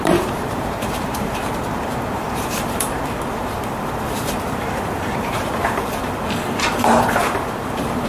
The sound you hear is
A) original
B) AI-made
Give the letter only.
B